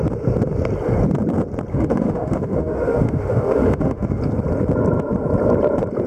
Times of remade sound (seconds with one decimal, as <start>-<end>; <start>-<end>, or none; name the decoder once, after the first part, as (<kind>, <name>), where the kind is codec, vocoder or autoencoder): 1.7-4.2 (autoencoder, DAC-VAE)